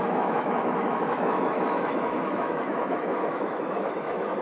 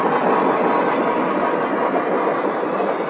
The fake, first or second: first